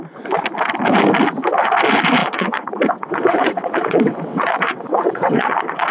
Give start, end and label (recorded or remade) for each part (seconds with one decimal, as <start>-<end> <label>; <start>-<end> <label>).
0.0-2.2 recorded; 2.2-5.9 remade